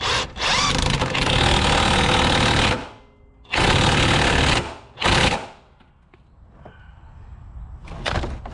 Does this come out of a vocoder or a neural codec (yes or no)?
no